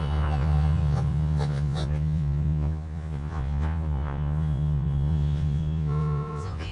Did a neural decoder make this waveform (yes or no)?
yes